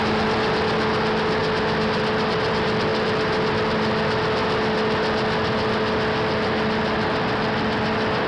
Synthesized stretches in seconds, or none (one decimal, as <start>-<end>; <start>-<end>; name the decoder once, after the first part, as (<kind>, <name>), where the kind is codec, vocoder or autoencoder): none